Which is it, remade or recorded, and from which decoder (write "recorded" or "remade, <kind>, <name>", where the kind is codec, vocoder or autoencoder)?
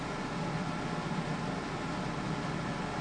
recorded